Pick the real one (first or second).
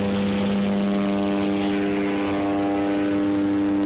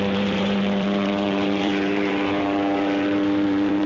first